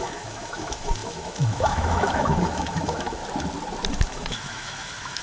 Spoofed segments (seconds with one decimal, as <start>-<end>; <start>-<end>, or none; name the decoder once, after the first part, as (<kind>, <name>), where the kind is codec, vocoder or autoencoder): 0.0-3.2 (autoencoder, DAC-VAE); 3.9-5.2